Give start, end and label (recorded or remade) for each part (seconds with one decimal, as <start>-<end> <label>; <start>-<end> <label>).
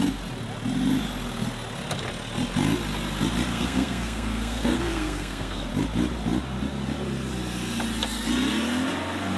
0.0-3.5 recorded; 3.5-5.7 remade; 5.7-9.4 recorded